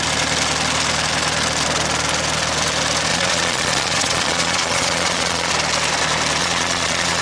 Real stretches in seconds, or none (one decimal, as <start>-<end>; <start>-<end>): 0.0-3.1; 5.5-6.4